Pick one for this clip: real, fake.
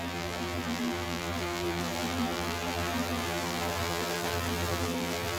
fake